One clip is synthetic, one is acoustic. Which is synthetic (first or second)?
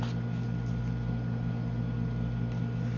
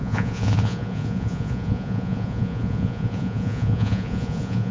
second